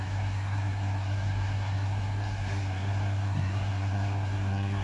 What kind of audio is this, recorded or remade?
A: remade